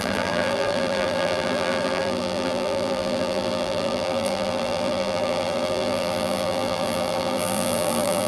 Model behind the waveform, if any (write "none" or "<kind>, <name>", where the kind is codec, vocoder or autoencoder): vocoder, BigVGAN v2